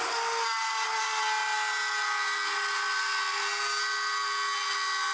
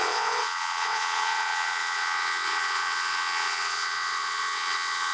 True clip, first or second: first